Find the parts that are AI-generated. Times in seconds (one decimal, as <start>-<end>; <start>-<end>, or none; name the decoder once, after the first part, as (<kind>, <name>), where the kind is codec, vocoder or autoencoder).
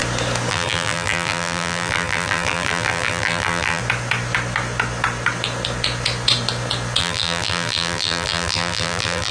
0.5-3.8 (vocoder, BigVGAN v2); 7.0-9.3